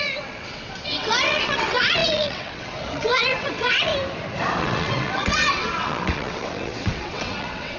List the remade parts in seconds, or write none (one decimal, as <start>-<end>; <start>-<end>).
0.0-3.9; 4.6-7.8